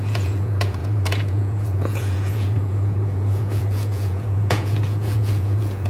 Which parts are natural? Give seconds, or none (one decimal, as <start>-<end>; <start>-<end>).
none